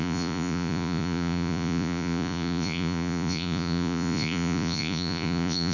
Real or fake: fake